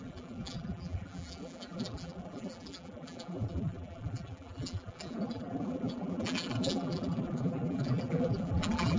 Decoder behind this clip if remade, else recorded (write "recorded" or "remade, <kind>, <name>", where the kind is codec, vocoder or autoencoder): remade, vocoder, BigVGAN v2